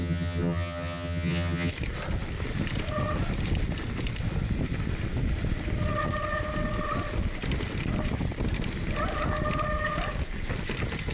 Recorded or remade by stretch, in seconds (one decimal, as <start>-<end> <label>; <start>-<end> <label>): 0.0-1.7 remade; 1.7-11.1 recorded